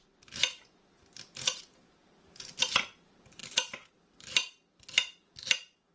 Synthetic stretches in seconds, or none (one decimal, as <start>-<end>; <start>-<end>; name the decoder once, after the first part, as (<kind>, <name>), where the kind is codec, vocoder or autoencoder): none